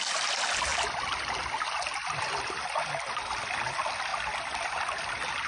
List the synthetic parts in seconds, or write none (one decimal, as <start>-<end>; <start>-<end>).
none